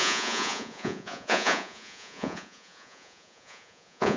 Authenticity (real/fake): fake